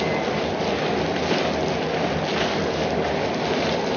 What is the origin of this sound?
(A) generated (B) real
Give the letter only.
B